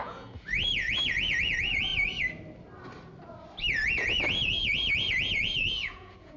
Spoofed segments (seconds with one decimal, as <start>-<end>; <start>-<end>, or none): 0.0-1.9; 3.9-6.4